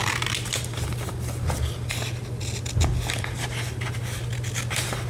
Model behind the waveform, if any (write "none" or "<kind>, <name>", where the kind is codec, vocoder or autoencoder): none